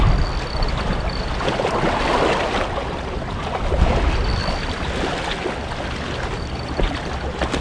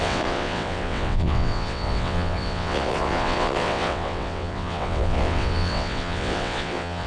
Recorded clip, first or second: first